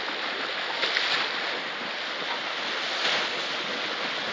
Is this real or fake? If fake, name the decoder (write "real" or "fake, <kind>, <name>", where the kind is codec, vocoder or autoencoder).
real